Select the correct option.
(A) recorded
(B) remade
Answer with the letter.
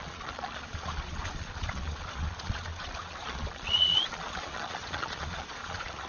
B